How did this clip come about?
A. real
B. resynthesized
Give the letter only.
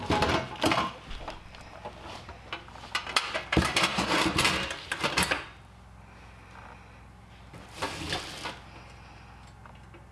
A